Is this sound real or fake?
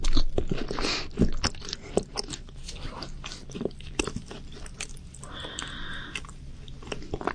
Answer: real